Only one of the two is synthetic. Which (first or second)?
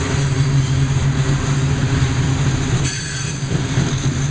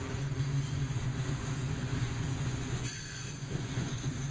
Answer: second